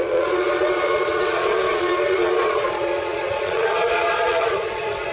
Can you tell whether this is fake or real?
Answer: fake